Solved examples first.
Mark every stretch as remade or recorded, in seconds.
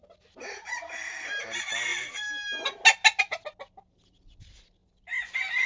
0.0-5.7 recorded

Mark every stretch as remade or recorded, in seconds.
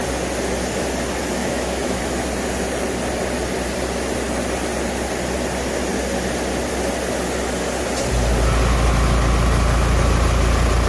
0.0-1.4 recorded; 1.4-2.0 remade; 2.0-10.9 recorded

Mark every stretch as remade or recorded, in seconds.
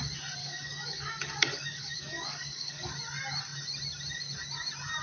0.0-0.4 recorded; 0.4-2.9 remade; 2.9-5.0 recorded